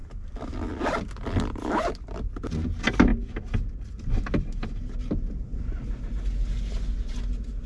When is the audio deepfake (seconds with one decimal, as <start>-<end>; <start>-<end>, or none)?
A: none